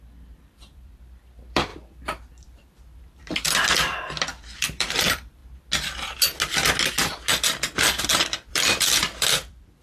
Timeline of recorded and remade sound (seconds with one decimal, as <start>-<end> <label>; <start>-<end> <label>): 0.0-5.4 remade; 5.4-8.0 recorded; 8.0-9.8 remade

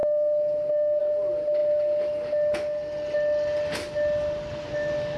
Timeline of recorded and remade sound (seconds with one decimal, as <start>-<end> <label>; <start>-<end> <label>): 0.0-5.2 recorded

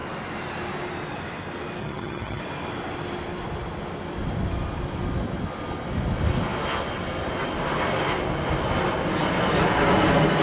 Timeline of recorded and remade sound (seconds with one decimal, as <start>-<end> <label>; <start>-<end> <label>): 0.0-1.8 recorded; 1.8-2.4 remade; 2.4-10.4 recorded